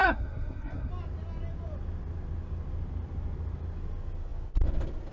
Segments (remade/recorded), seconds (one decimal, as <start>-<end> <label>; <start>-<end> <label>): 0.0-0.9 remade; 0.9-5.1 recorded